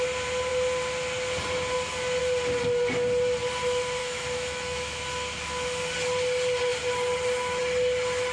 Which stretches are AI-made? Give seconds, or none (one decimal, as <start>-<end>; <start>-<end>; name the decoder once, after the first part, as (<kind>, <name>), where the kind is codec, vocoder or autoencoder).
4.0-5.0 (autoencoder, DAC-VAE)